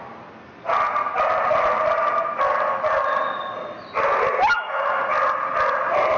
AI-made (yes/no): no